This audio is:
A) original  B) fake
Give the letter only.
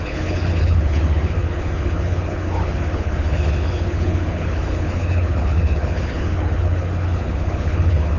B